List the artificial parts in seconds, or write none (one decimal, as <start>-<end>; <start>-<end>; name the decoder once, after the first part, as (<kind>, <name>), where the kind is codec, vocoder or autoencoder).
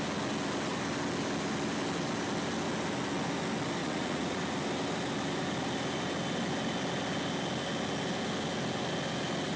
3.8-4.4 (vocoder, Vocos)